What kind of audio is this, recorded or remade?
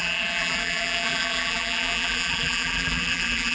remade